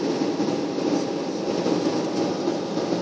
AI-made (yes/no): yes